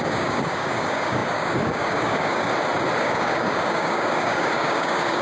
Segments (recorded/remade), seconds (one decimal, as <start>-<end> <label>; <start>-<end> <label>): 0.0-2.5 remade; 2.5-3.0 recorded; 3.0-5.2 remade